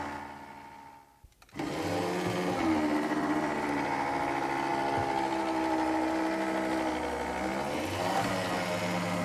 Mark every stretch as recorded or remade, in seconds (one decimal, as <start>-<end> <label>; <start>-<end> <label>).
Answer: 0.0-9.2 recorded